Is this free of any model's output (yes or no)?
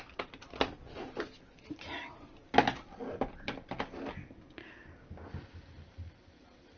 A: yes